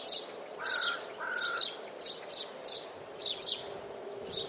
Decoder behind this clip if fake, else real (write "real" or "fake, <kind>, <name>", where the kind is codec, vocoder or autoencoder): real